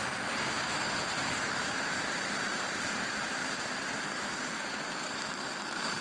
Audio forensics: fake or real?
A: fake